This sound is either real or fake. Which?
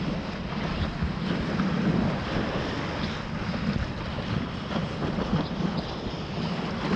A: real